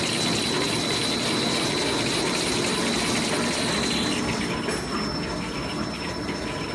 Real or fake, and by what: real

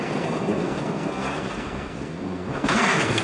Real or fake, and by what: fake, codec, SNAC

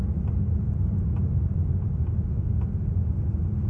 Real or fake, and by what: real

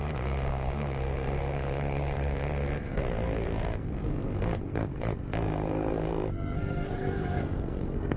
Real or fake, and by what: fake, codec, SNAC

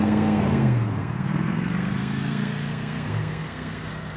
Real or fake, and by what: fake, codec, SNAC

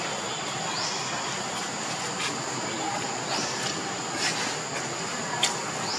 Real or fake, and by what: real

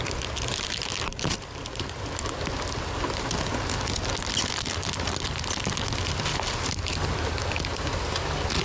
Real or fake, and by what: real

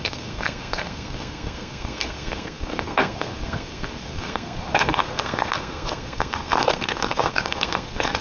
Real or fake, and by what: fake, codec, SNAC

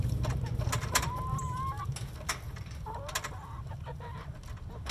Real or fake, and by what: real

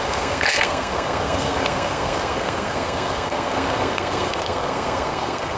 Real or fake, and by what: fake, codec, SNAC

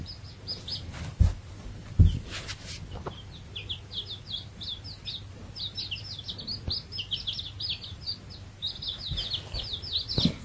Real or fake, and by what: real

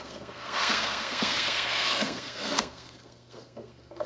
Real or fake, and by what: fake, codec, SNAC